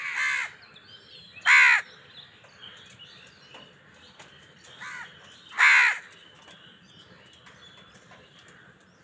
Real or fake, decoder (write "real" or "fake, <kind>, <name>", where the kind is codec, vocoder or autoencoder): real